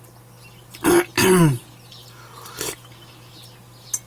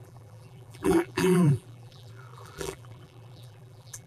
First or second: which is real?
first